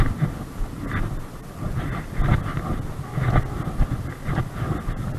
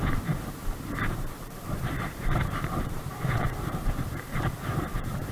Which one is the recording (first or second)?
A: first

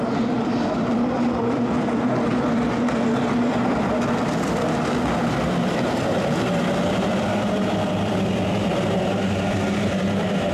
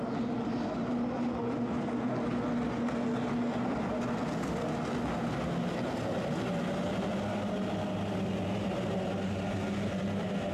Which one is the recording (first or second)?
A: second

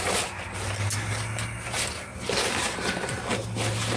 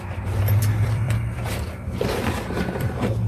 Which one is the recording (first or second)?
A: first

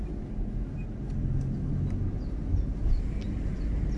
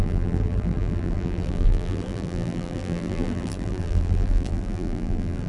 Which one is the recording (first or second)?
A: first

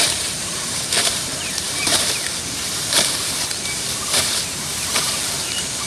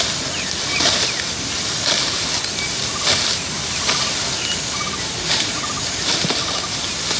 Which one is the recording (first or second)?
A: second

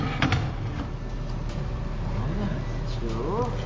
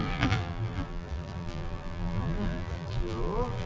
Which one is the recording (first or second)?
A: first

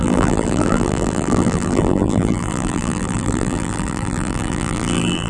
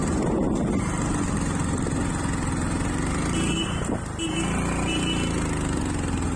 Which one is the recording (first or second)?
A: second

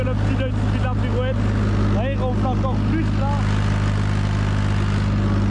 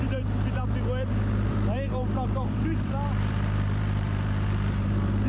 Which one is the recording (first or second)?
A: first